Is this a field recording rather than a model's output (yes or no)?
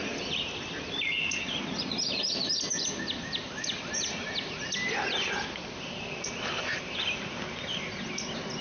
yes